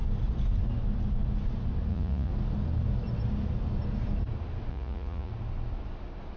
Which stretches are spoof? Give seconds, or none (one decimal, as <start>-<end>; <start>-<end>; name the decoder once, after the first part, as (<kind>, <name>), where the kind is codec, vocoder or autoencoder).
1.9-2.3 (vocoder, Vocos); 4.7-5.3